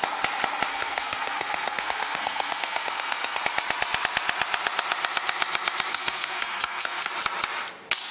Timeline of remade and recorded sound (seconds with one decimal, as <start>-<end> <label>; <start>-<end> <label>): 0.0-0.7 recorded; 0.7-3.4 remade; 3.4-5.9 recorded; 5.9-7.1 remade; 7.1-8.1 recorded